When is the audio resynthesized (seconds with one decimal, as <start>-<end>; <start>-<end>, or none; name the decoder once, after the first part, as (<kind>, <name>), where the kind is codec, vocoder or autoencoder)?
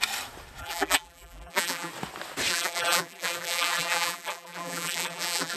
0.6-1.9 (vocoder, BigVGAN v2); 2.5-5.6